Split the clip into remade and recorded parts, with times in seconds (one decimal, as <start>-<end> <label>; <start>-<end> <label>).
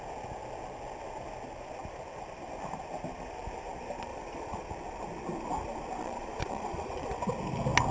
0.0-4.1 recorded; 4.1-4.7 remade; 4.7-6.0 recorded; 6.0-7.1 remade; 7.1-7.9 recorded